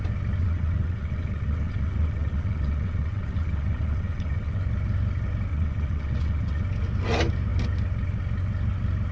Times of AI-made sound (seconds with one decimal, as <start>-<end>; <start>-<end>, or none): 0.4-4.6; 5.5-6.6